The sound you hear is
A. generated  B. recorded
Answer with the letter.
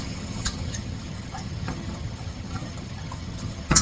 A